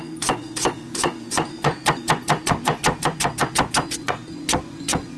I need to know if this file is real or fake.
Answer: fake